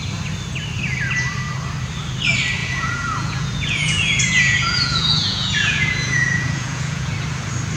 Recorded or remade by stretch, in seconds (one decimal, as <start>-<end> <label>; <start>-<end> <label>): 0.0-2.6 recorded; 2.6-7.1 remade; 7.1-7.8 recorded